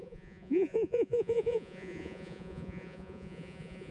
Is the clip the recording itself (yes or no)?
no